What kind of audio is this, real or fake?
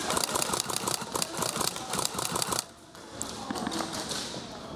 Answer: real